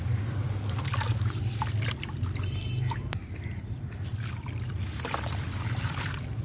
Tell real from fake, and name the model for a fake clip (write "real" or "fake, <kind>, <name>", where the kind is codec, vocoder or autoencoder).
fake, vocoder, BigVGAN v2